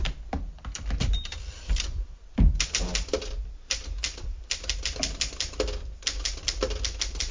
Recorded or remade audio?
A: remade